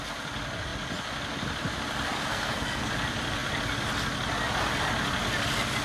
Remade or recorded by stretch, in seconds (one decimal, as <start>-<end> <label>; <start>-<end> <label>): 0.0-2.3 recorded; 2.3-2.9 remade; 2.9-5.8 recorded